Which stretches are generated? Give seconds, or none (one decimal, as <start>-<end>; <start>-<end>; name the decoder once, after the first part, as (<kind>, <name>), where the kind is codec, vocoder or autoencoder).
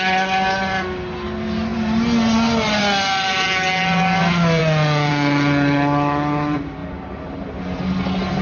none